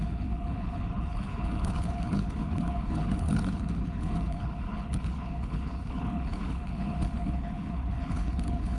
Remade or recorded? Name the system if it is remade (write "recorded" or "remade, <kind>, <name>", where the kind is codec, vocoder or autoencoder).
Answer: remade, codec, HILCodec